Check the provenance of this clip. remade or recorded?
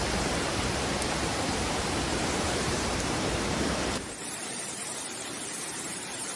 remade